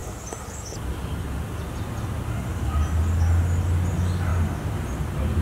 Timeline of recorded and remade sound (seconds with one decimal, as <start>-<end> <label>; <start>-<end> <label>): 0.0-5.4 recorded